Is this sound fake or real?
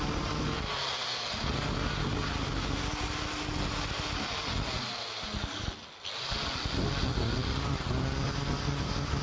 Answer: real